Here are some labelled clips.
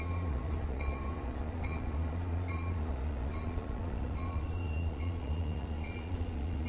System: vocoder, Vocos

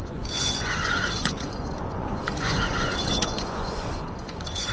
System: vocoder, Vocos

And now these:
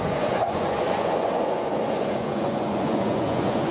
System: vocoder, Vocos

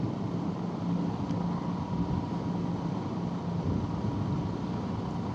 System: none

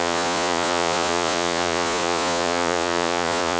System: vocoder, Vocos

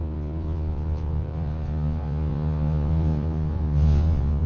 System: vocoder, Vocos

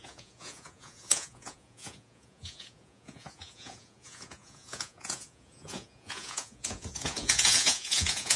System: vocoder, Vocos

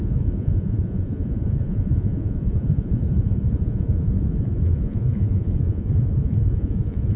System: vocoder, Vocos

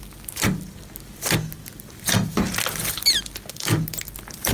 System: none